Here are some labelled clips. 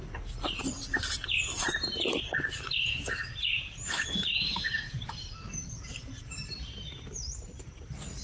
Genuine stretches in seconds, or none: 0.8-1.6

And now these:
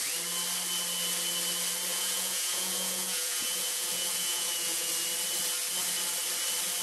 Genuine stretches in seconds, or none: 0.0-1.9; 4.9-6.8

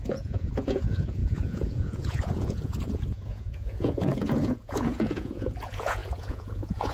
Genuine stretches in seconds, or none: none